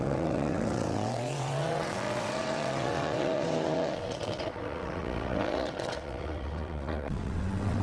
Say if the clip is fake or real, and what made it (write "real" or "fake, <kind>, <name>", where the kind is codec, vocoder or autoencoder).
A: fake, vocoder, WaveNeXt